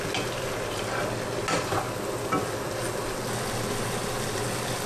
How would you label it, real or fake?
real